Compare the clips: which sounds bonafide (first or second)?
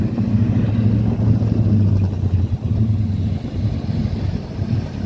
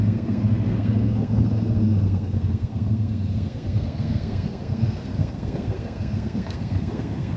first